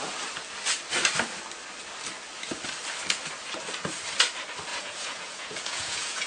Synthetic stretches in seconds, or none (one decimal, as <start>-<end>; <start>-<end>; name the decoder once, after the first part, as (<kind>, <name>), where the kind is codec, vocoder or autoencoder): 4.7-6.3 (vocoder, Vocos)